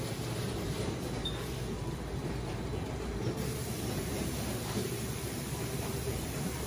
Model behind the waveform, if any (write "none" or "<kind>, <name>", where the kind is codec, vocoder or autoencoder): vocoder, BigVGAN v2